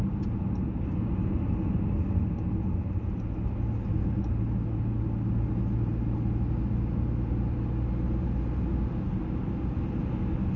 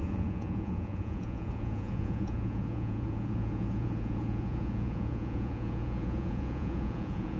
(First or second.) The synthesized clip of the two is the second